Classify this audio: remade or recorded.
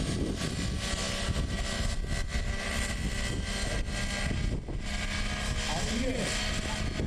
recorded